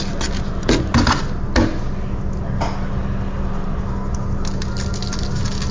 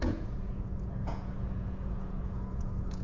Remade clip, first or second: second